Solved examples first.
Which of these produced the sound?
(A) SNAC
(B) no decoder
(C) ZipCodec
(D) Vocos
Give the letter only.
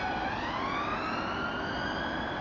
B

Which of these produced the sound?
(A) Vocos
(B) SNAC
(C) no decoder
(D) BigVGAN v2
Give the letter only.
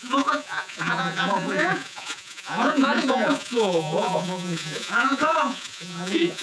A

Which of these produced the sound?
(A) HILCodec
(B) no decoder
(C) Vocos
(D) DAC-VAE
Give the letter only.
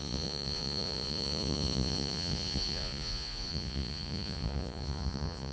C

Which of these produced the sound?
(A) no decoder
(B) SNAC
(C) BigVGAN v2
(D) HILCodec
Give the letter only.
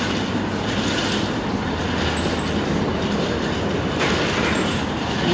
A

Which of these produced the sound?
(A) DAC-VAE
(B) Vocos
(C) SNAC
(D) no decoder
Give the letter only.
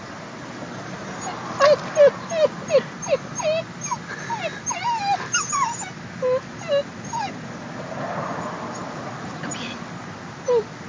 D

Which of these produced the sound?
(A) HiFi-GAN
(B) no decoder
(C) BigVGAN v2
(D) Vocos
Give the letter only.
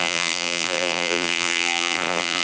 C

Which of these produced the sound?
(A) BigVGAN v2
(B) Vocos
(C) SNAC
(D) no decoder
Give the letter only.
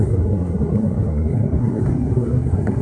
C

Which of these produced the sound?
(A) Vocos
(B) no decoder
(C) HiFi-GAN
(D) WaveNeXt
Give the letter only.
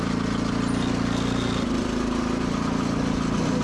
B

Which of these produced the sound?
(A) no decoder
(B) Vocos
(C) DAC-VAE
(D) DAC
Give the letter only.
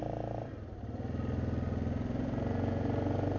A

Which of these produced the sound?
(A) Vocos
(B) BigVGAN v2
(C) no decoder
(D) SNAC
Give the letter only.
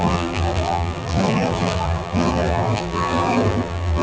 B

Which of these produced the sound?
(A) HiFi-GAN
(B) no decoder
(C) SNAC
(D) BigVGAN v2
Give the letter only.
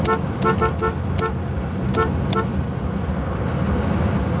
B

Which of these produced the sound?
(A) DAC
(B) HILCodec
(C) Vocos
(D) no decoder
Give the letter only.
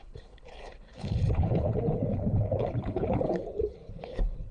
B